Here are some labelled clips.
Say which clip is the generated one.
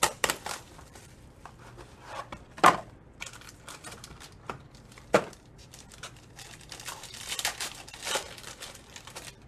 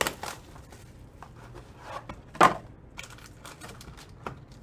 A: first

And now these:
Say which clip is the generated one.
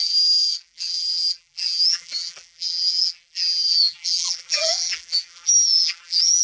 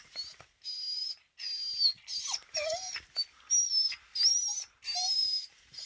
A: first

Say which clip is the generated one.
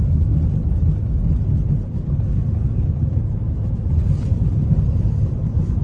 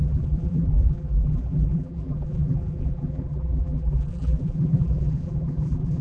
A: second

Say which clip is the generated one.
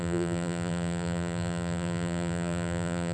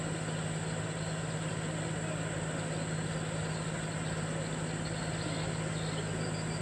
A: first